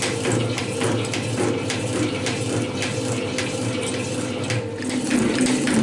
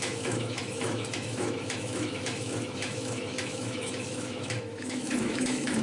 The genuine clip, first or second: first